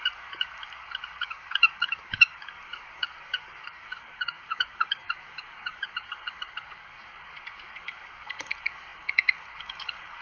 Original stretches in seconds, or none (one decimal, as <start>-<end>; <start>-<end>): none